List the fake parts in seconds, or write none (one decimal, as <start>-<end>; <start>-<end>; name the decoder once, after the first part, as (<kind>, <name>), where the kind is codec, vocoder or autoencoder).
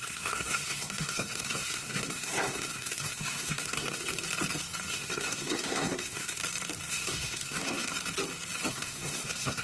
0.0-4.0 (codec, SNAC); 4.9-6.4; 6.9-7.9; 8.7-9.6